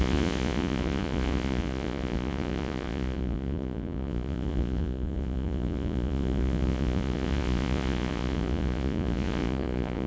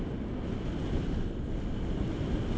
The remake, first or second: first